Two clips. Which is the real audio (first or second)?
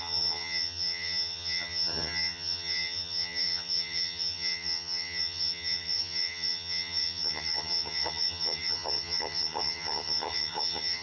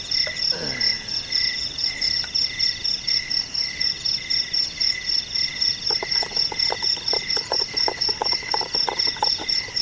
second